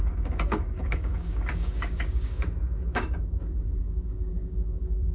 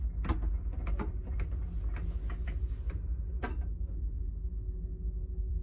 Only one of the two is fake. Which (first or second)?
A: first